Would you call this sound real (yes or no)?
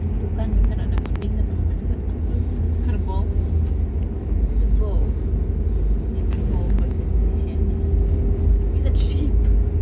yes